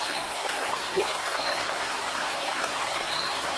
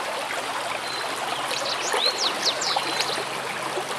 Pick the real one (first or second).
second